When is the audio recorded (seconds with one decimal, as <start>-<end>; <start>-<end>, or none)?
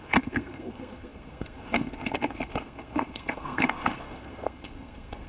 none